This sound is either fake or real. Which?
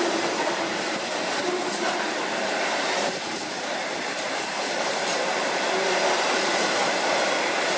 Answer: fake